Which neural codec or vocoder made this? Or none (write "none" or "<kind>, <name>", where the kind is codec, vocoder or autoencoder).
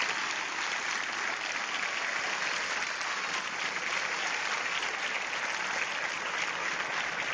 none